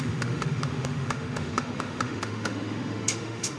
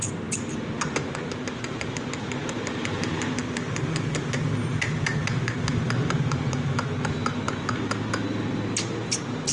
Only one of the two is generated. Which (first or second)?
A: first